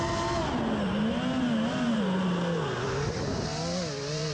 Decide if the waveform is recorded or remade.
recorded